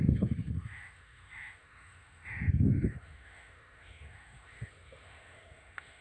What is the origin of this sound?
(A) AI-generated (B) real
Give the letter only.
A